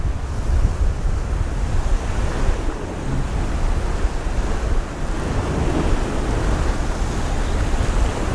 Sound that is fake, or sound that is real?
real